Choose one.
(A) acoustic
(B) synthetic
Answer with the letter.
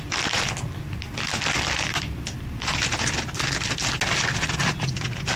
A